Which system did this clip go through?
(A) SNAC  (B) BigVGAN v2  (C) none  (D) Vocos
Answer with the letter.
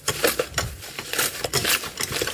C